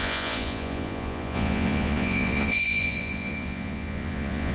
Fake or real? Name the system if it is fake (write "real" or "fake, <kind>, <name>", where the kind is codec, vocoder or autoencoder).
fake, vocoder, Vocos